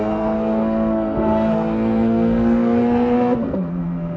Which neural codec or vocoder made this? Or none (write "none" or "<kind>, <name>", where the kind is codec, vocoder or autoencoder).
codec, SNAC